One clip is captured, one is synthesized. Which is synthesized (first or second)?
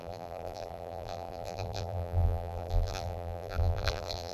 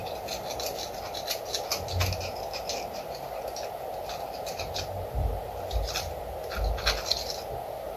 first